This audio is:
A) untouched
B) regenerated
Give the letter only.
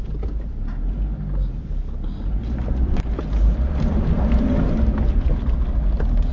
A